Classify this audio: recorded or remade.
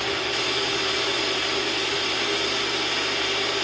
recorded